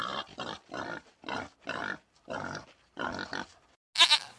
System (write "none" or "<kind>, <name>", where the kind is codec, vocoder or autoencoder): none